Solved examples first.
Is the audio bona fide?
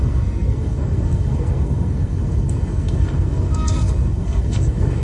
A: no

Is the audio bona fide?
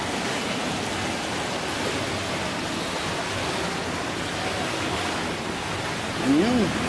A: yes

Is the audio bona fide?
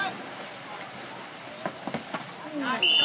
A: yes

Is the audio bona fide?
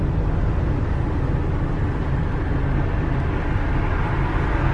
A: yes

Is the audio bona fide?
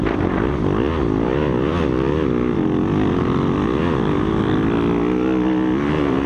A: yes